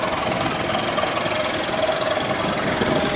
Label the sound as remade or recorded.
recorded